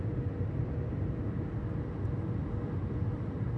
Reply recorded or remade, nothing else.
recorded